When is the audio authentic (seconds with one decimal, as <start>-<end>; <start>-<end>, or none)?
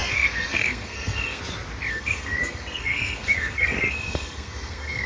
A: 1.4-1.9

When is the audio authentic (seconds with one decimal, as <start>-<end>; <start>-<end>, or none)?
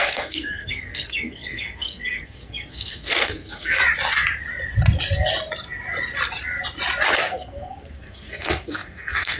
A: 3.8-7.1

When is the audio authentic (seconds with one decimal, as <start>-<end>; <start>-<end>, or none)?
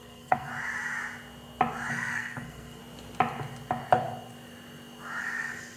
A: 0.5-1.9; 2.8-5.2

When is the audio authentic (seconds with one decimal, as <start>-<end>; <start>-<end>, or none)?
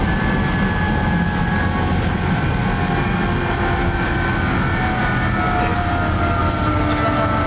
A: 0.0-7.5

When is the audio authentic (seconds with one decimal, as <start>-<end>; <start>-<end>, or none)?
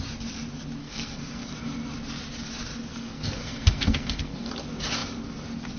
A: 0.0-0.8; 1.5-2.9; 4.5-5.8